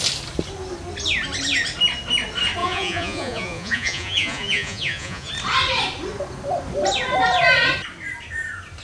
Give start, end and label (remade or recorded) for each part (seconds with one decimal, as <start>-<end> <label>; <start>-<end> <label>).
0.0-2.6 recorded; 2.6-5.3 remade; 5.3-8.8 recorded